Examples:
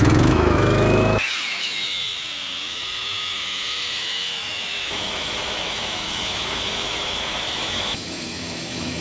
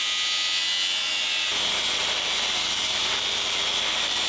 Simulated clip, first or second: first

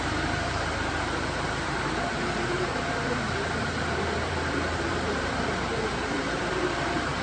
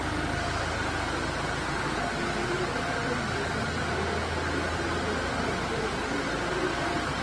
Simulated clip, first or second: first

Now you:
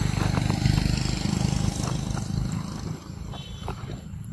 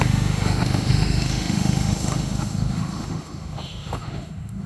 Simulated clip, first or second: second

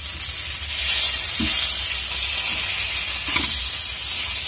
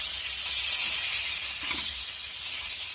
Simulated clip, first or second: second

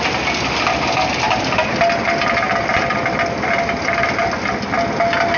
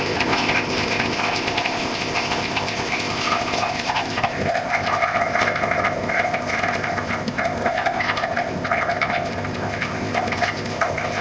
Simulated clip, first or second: second